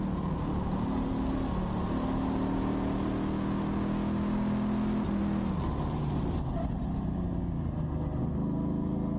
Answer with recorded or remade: recorded